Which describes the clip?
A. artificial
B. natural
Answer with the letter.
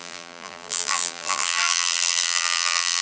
A